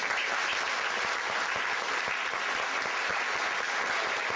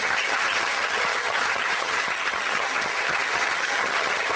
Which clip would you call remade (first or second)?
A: second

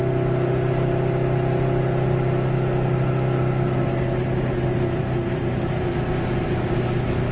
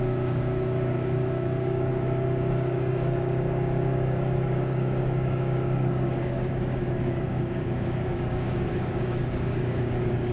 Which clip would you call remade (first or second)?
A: second